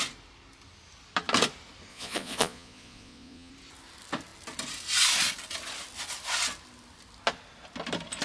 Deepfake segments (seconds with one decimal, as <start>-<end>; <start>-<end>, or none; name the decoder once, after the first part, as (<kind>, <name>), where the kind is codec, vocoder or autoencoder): 1.9-3.5 (vocoder, Vocos)